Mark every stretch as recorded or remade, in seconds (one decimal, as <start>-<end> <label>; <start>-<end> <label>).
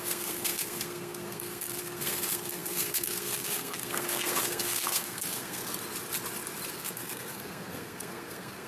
0.0-5.6 remade; 5.6-6.7 recorded; 6.7-8.7 remade